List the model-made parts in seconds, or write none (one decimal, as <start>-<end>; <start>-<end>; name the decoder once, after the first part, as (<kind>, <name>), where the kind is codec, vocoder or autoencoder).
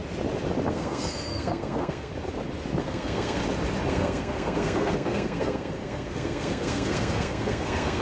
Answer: 0.7-2.1 (codec, SNAC); 2.8-3.4; 3.9-8.0